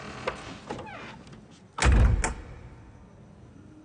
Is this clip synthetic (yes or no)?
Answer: no